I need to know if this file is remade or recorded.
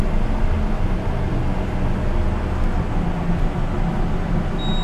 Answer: recorded